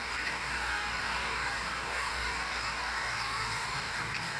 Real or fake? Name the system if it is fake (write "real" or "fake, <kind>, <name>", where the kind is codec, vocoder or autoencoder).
fake, codec, DAC